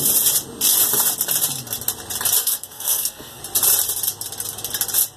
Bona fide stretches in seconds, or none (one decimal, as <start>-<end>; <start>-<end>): 0.0-2.4; 3.4-5.2